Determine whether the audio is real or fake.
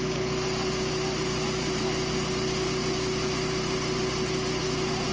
real